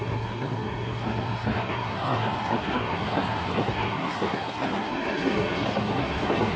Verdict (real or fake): fake